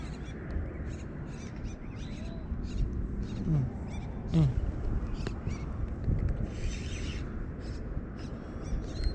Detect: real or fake real